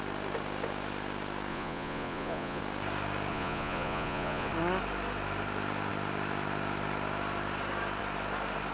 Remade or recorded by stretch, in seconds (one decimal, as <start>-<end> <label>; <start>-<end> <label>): 0.0-1.5 recorded; 1.5-2.6 remade; 2.6-3.3 recorded; 3.3-4.5 remade; 4.5-8.7 recorded